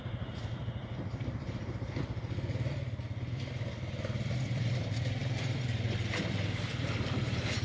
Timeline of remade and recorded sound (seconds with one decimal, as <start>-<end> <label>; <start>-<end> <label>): 0.0-7.6 remade